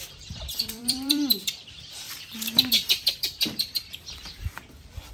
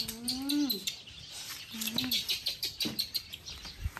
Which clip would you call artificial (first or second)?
first